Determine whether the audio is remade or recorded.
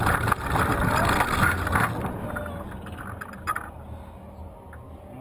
recorded